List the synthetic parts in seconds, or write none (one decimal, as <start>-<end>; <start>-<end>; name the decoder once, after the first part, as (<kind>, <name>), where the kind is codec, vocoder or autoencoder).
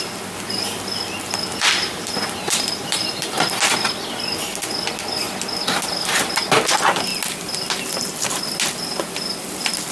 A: 1.5-3.5 (vocoder, BigVGAN v2)